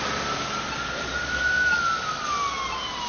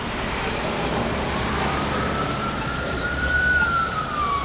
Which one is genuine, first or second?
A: first